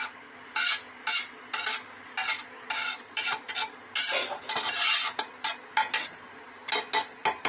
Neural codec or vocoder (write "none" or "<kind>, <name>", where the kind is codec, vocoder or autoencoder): none